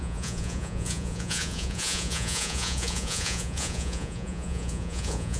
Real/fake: fake